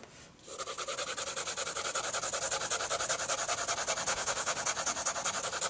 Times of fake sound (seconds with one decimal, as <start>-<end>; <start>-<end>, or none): 4.1-4.6